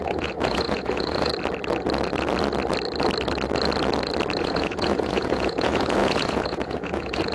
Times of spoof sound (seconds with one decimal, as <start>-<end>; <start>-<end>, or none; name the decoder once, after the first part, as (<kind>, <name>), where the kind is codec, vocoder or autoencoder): 0.0-1.3 (vocoder, Vocos); 4.4-7.3

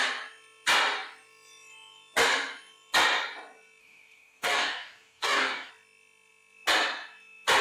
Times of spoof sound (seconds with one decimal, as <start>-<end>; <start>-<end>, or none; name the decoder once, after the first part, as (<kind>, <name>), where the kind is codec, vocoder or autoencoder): 3.8-5.7 (codec, DAC)